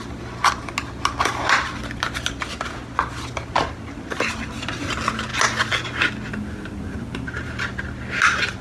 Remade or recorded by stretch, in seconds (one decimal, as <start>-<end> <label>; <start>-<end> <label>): 0.0-8.6 recorded